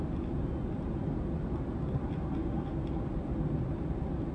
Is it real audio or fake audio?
real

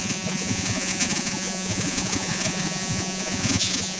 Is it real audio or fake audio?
fake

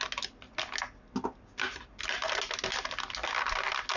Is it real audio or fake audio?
real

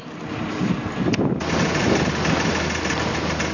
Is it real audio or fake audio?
real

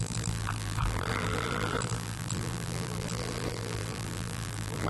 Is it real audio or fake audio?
fake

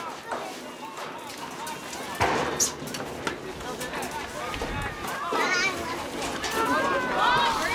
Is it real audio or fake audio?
real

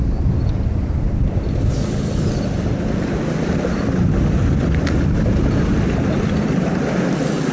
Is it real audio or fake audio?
real